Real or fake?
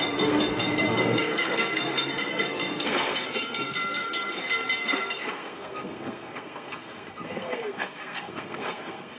fake